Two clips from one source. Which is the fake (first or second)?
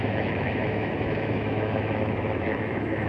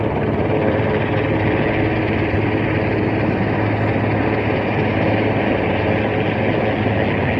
first